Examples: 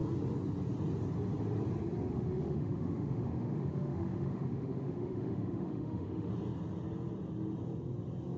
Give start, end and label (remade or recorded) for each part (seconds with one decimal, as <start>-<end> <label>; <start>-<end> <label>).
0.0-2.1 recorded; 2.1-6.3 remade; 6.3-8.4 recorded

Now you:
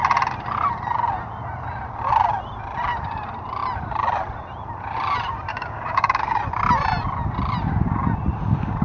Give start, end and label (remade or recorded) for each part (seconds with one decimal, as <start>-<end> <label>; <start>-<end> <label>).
0.0-5.5 recorded; 5.5-6.4 remade; 6.4-8.8 recorded

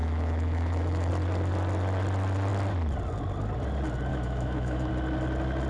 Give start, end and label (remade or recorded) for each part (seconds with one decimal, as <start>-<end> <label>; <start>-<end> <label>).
0.0-1.1 remade; 1.1-4.1 recorded; 4.1-4.9 remade; 4.9-5.7 recorded